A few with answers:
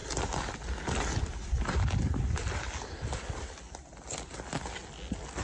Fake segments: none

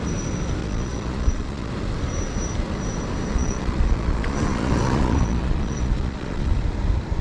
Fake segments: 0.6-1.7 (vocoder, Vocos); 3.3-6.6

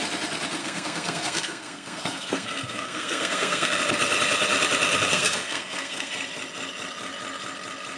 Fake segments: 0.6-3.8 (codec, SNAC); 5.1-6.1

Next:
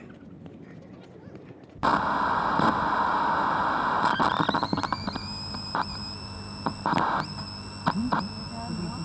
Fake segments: none